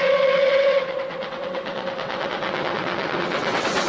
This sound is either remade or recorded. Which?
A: remade